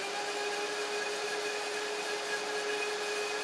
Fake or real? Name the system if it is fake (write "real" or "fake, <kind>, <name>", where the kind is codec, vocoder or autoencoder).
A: real